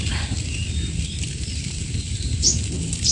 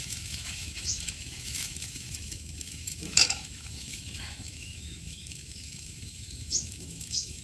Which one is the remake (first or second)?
second